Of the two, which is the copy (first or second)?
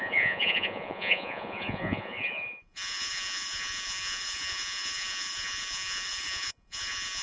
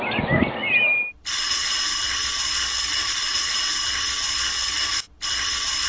first